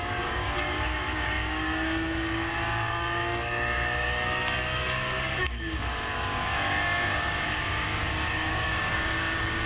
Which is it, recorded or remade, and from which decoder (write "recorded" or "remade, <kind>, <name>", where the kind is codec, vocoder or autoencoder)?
remade, codec, DAC